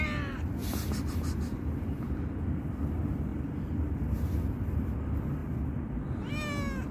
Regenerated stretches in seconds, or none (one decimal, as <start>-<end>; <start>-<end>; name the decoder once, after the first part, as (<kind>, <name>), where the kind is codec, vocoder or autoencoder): 0.6-2.9 (vocoder, BigVGAN v2); 3.3-4.5; 5.4-6.3